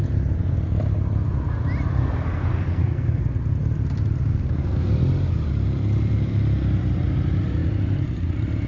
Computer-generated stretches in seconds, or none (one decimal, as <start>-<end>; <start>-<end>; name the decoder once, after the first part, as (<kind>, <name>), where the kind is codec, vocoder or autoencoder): 2.0-3.2 (codec, SNAC); 4.3-4.9